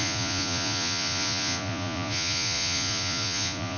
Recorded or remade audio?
remade